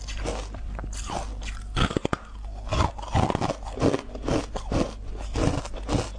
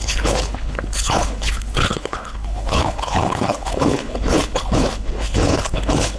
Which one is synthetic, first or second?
second